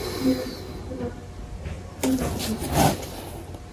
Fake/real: real